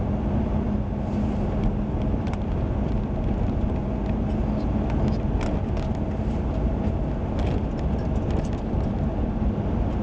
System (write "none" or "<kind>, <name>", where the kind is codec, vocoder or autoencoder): none